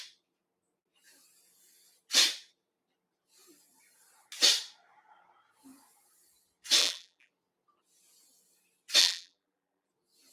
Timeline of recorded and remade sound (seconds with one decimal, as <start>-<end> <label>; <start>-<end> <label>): 0.0-6.8 recorded; 6.8-7.3 remade; 7.3-9.0 recorded; 9.0-9.9 remade; 9.9-10.3 recorded